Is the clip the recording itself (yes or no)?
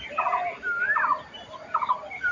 no